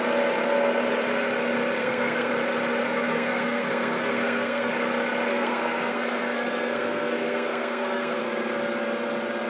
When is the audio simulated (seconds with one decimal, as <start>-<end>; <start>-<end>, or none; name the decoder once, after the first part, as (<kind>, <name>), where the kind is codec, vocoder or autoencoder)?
1.8-2.3 (codec, SNAC); 2.8-4.7; 5.3-8.2